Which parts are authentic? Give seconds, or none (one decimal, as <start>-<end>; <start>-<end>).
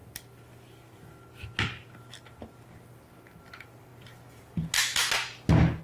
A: 0.0-5.8